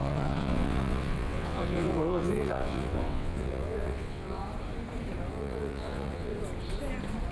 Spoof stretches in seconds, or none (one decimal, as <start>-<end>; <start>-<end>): 0.0-4.4; 5.3-6.3